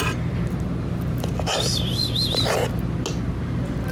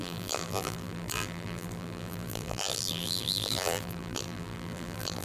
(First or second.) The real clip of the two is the first